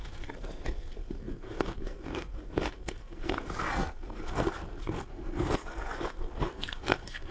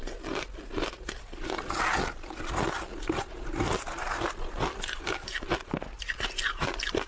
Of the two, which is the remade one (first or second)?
first